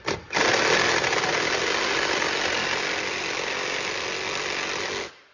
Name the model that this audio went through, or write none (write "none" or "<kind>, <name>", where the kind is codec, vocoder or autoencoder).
none